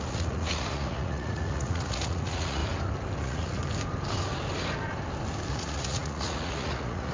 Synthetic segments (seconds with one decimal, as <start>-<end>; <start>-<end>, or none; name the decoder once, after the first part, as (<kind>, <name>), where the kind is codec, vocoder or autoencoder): 0.0-2.6 (vocoder, Vocos); 3.2-3.6; 5.5-7.1